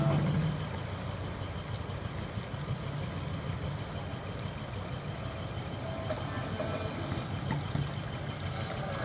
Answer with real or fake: real